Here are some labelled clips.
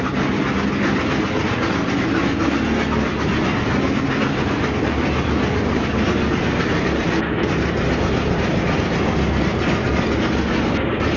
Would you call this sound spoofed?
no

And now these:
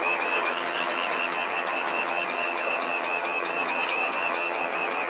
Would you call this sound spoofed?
yes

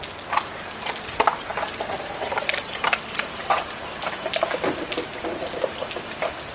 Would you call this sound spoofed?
no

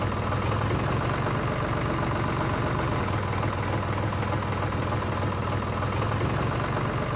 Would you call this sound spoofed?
no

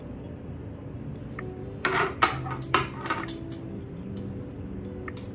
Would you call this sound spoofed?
no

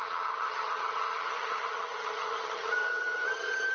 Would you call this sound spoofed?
yes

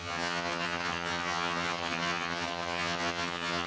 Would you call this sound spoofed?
yes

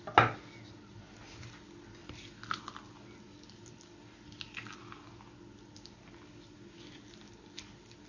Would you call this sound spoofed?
no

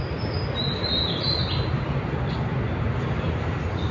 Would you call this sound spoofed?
no